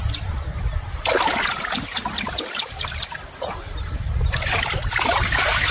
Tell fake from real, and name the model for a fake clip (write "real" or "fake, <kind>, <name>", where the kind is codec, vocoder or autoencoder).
fake, vocoder, BigVGAN v2